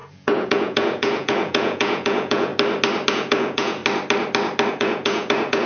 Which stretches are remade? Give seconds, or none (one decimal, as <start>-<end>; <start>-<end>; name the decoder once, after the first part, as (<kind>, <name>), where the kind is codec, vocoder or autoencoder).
0.0-2.5 (vocoder, Vocos); 3.1-3.8; 4.7-5.7